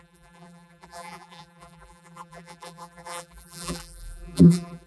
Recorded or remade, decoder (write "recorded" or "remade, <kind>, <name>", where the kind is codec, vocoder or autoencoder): remade, vocoder, BigVGAN v2